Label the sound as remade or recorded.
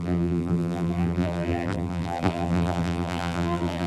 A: remade